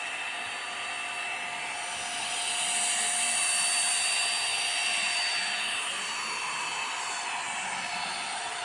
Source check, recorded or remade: recorded